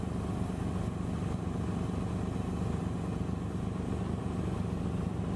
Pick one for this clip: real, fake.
real